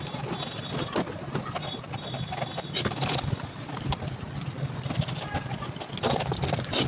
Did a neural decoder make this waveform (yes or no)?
no